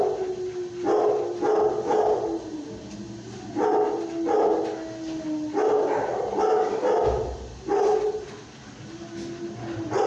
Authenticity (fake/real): real